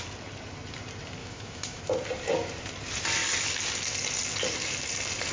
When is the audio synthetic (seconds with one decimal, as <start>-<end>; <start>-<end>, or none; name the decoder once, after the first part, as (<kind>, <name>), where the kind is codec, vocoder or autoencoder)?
1.2-1.8 (autoencoder, DAC-VAE)